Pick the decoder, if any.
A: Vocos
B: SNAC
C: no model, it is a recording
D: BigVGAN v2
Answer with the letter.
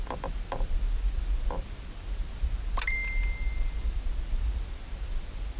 C